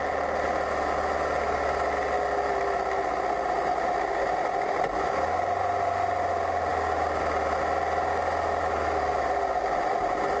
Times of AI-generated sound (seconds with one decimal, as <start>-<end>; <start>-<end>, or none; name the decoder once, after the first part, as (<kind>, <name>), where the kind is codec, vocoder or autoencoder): none